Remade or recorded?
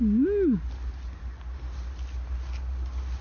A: recorded